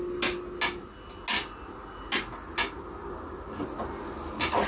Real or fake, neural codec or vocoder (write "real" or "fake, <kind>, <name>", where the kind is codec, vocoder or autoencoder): real